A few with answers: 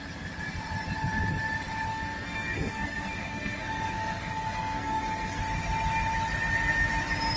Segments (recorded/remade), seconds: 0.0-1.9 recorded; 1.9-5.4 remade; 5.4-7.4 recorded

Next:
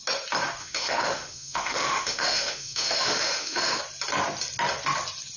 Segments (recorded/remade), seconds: 0.0-0.6 recorded; 0.6-3.8 remade; 3.8-5.4 recorded

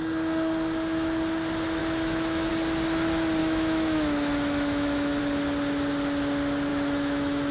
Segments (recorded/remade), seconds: 0.0-1.8 recorded; 1.8-2.5 remade; 2.5-3.4 recorded; 3.4-5.2 remade; 5.2-6.7 recorded; 6.7-7.5 remade

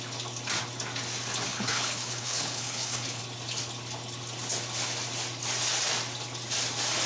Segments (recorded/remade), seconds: 0.0-1.5 recorded; 1.5-3.2 remade; 3.2-7.1 recorded

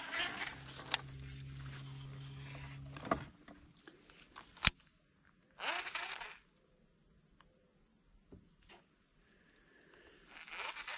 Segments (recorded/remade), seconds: 0.0-11.0 recorded

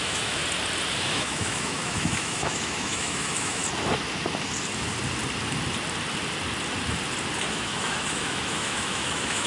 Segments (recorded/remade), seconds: 0.0-0.4 remade; 0.4-1.0 recorded; 1.0-3.6 remade; 3.6-7.5 recorded; 7.5-9.5 remade

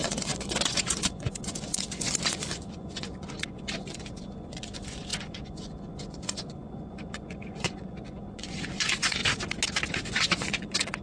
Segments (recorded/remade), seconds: 0.0-9.2 remade; 9.2-9.9 recorded; 9.9-11.0 remade